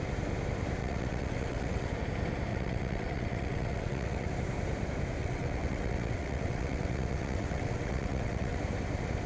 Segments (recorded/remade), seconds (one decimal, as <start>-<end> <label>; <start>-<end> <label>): 0.0-0.8 recorded; 0.8-1.9 remade; 1.9-2.5 recorded; 2.5-4.3 remade; 4.3-5.2 recorded; 5.2-8.6 remade; 8.6-9.3 recorded